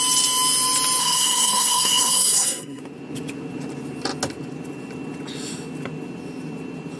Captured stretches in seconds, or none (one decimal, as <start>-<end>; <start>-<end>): 0.0-1.0; 2.8-7.0